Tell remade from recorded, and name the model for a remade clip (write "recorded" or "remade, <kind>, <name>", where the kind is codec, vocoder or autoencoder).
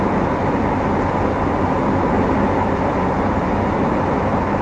recorded